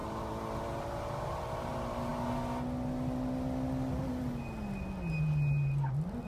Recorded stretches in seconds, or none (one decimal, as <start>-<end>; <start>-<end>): 1.7-6.3